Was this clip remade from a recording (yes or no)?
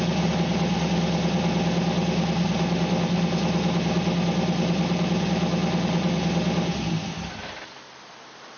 no